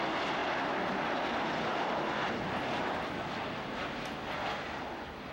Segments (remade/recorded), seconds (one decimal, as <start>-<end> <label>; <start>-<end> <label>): 0.0-5.3 recorded